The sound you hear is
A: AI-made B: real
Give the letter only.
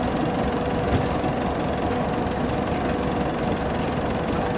B